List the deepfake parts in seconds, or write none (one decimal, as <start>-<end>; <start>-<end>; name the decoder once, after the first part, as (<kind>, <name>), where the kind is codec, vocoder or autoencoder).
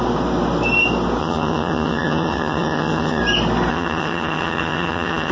1.2-3.2 (vocoder, HiFi-GAN); 3.7-5.3